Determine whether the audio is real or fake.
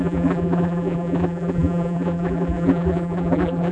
fake